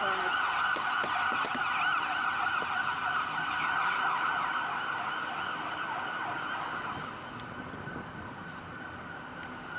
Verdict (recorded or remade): recorded